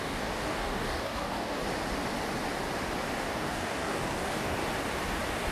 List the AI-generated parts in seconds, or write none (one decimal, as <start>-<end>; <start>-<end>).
0.0-1.6; 3.2-4.6

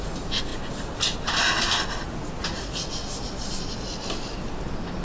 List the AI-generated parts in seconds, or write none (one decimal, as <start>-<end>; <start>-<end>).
none